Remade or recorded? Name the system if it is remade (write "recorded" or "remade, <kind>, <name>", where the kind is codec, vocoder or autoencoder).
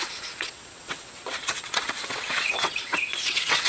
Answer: remade, vocoder, WaveNeXt